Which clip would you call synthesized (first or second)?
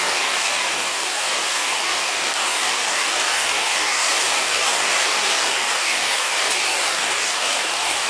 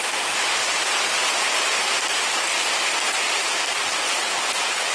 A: first